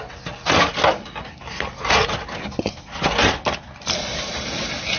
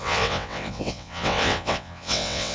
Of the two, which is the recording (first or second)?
first